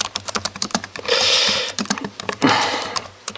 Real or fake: fake